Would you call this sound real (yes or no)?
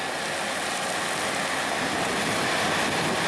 yes